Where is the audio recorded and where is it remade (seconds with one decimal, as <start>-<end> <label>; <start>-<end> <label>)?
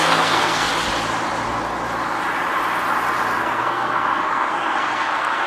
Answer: 0.0-0.7 remade; 0.7-3.4 recorded; 3.4-5.5 remade